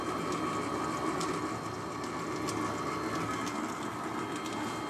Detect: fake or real real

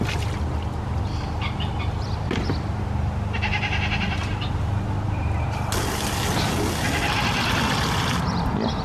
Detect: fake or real real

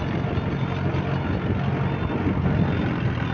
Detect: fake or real real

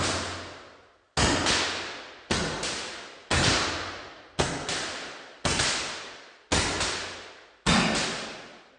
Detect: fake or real real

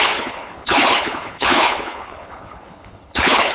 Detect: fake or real fake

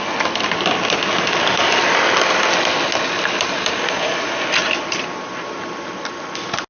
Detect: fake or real real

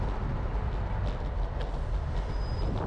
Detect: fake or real real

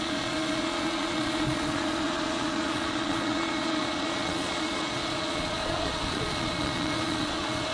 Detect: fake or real fake